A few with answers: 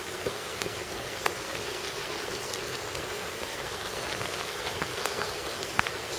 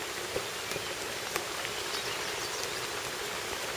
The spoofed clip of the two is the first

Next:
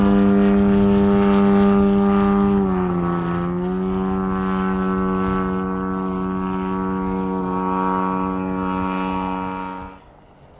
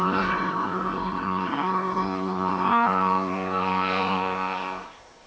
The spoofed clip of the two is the second